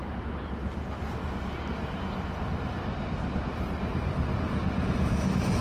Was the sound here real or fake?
real